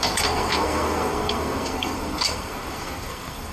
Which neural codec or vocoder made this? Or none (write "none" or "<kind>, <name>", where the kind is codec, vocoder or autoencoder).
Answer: codec, SNAC